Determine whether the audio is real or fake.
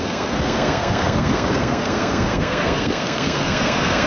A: fake